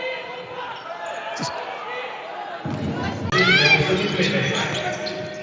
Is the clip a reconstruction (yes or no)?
no